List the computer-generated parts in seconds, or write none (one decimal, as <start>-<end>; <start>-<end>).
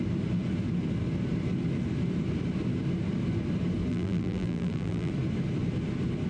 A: 3.9-5.1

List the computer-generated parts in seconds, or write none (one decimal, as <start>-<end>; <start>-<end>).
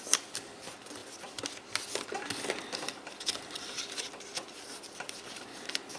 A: none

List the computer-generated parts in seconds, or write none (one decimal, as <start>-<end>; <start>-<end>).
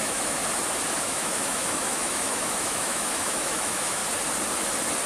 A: 0.0-0.4; 1.0-4.0